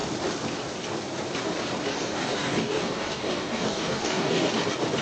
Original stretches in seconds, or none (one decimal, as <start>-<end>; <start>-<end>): 0.0-1.9; 4.5-5.0